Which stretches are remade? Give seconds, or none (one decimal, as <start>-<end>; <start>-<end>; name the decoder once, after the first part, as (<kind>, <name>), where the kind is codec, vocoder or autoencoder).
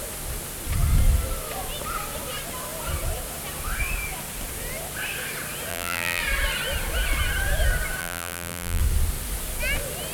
5.7-6.2 (vocoder, BigVGAN v2); 8.0-8.8